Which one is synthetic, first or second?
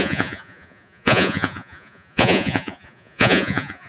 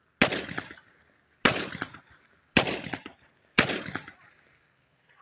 first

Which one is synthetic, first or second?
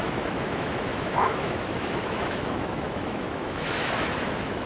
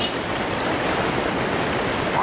first